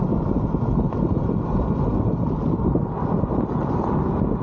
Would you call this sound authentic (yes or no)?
yes